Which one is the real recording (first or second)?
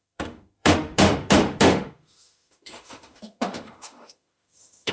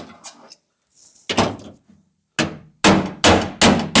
second